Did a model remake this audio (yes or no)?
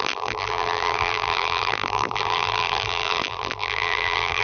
yes